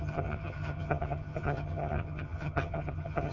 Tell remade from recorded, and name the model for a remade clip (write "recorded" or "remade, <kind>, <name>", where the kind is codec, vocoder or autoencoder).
remade, vocoder, HiFi-GAN